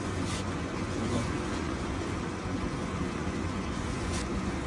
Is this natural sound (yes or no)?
no